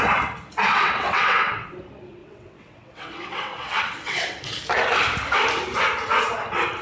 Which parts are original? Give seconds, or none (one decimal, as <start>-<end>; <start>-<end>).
0.0-0.7; 1.7-2.2; 4.4-6.8